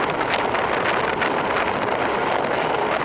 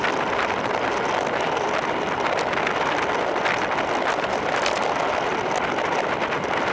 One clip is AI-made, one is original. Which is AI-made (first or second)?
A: second